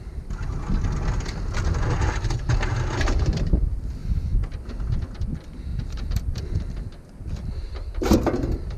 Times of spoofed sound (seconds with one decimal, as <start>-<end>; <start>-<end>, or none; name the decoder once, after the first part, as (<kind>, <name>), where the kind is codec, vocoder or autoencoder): 5.7-6.4 (vocoder, BigVGAN v2)